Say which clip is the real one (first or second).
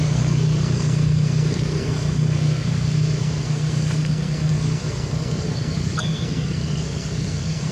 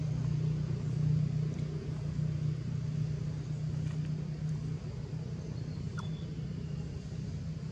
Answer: second